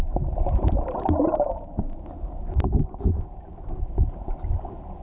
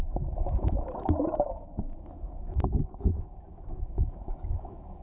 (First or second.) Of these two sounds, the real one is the first